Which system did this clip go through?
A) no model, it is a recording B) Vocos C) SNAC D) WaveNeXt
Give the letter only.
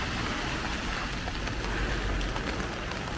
A